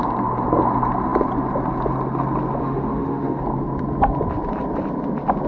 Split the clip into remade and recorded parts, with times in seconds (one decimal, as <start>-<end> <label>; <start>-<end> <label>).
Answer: 0.0-2.6 recorded; 2.6-3.4 remade; 3.4-5.5 recorded

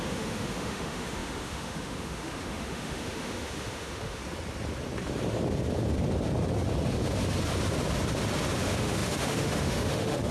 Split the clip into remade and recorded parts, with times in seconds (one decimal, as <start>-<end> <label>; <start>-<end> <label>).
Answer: 0.0-4.2 remade; 4.2-8.6 recorded; 8.6-10.3 remade

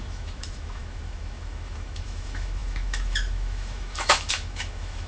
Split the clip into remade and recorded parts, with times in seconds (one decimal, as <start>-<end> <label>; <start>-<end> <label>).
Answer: 0.0-5.1 remade

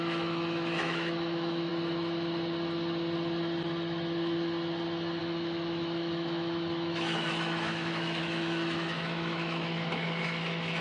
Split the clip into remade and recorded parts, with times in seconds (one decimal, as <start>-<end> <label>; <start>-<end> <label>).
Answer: 0.0-1.7 remade; 1.7-5.2 recorded; 5.2-10.8 remade

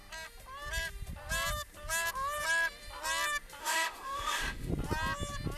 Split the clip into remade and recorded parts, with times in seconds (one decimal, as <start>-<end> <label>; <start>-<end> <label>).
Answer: 0.0-3.6 recorded; 3.6-4.7 remade; 4.7-5.6 recorded

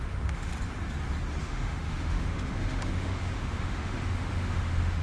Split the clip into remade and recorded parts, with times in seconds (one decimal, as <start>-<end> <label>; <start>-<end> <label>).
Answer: 0.0-0.5 remade; 0.5-1.4 recorded; 1.4-5.0 remade